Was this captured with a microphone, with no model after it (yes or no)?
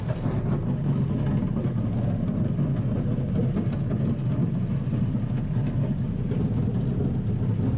yes